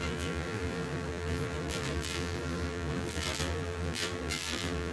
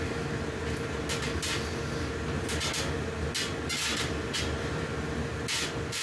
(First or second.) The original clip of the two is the second